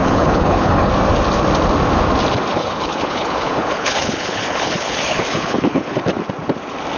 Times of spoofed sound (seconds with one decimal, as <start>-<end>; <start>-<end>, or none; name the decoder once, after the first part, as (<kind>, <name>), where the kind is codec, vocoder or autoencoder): 0.0-0.9 (codec, HILCodec); 2.5-6.2